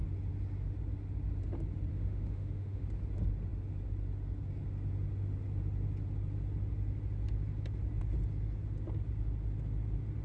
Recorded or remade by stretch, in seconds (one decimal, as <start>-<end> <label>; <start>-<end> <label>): 0.0-1.9 recorded; 1.9-2.8 remade; 2.8-10.2 recorded